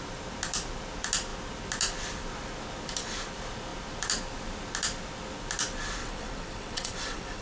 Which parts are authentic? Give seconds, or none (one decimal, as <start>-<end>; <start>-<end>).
0.0-6.0